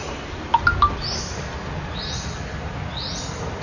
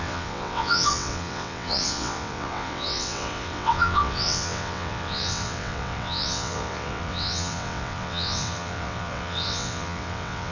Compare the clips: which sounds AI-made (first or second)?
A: second